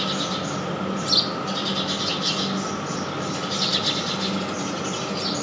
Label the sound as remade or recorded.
recorded